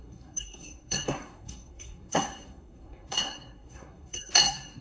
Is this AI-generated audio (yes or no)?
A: yes